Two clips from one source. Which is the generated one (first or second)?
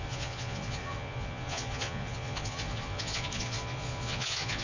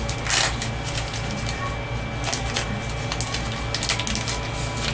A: first